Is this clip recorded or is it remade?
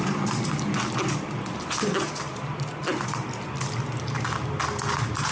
recorded